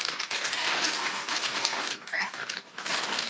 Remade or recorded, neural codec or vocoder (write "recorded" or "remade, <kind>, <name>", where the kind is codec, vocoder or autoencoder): remade, codec, DAC